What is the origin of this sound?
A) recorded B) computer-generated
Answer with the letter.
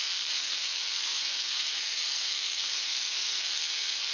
B